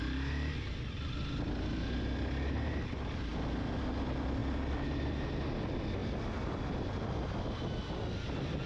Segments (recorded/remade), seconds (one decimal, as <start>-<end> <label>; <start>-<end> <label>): 0.0-8.7 recorded